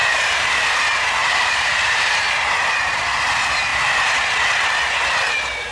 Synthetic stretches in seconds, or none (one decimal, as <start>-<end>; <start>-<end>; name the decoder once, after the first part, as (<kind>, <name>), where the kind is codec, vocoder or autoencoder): 0.0-0.5 (vocoder, BigVGAN v2); 1.2-2.5

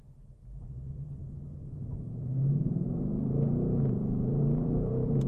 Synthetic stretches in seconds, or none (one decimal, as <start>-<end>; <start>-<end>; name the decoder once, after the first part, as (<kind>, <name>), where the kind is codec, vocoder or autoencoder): 0.0-5.3 (vocoder, BigVGAN v2)

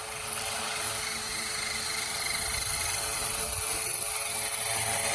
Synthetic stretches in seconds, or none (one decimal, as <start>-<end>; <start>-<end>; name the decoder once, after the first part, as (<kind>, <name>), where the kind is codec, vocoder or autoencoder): none

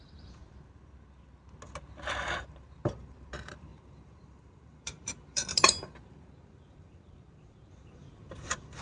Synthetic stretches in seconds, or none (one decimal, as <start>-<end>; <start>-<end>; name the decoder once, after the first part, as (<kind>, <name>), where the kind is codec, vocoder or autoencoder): 0.0-0.4 (vocoder, BigVGAN v2); 2.4-8.8